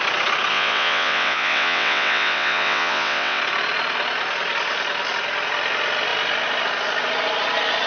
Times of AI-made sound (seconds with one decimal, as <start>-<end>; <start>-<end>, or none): 0.5-3.4